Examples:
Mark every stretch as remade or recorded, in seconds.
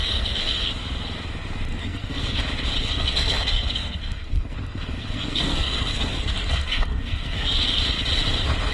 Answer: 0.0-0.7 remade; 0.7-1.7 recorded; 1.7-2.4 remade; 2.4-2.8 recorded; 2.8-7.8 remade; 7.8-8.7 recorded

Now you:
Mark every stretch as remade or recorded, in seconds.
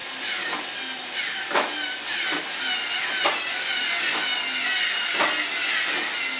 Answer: 0.0-6.4 recorded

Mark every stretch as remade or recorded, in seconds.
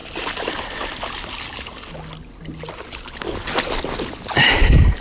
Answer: 0.0-5.0 recorded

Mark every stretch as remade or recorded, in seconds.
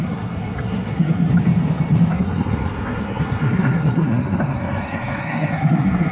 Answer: 0.0-1.3 remade; 1.3-2.1 recorded; 2.1-6.1 remade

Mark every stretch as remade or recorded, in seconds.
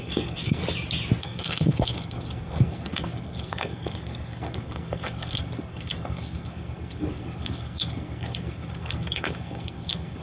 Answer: 0.0-0.6 remade; 0.6-1.2 recorded; 1.2-10.2 remade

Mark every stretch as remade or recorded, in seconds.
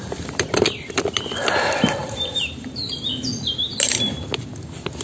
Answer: 0.0-2.0 recorded; 2.0-3.1 remade; 3.1-5.0 recorded